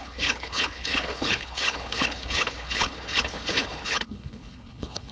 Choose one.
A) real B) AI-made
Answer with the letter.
B